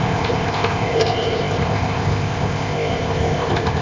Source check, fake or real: fake